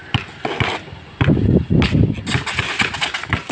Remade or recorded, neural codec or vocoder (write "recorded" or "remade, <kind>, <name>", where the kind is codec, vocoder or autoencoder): recorded